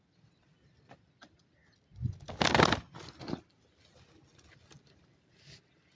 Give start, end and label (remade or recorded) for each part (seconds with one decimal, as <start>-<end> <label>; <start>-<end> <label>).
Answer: 0.0-6.0 recorded